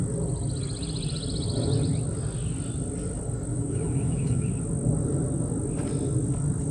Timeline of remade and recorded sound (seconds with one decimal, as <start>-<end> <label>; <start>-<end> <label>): 0.0-3.5 recorded; 3.5-4.5 remade; 4.5-6.7 recorded